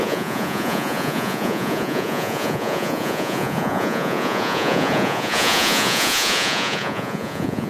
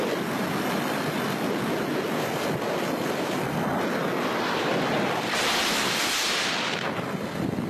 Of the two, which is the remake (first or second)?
first